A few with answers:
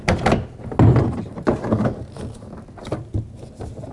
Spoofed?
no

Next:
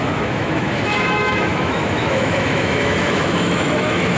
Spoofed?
yes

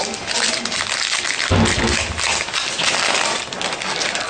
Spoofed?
no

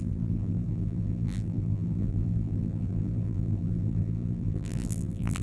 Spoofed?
yes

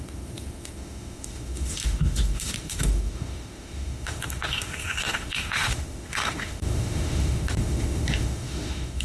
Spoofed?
yes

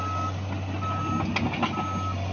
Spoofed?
no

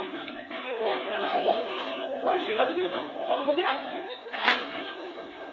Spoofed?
yes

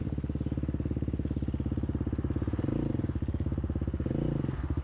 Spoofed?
no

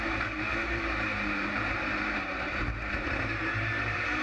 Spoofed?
yes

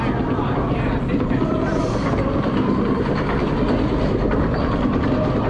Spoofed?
no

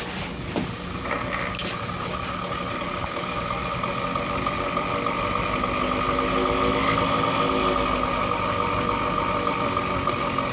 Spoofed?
no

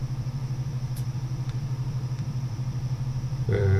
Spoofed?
yes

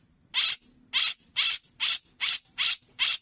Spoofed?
no